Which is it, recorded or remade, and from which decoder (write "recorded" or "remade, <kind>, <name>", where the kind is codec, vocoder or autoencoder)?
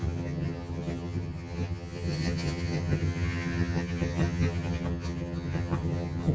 remade, vocoder, HiFi-GAN